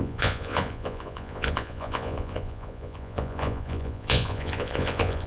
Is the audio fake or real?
fake